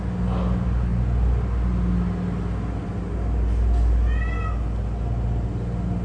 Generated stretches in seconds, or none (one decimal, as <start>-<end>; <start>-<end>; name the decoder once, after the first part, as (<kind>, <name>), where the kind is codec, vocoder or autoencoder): none